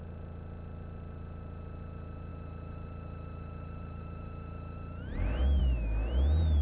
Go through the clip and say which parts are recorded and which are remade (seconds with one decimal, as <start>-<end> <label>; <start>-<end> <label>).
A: 0.0-6.6 recorded

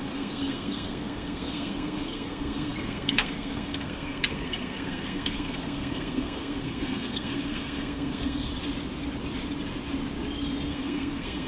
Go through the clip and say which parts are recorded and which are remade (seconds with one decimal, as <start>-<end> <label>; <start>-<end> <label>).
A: 0.0-8.5 remade; 8.5-10.7 recorded; 10.7-11.5 remade